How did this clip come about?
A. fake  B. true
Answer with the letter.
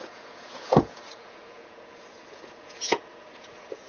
A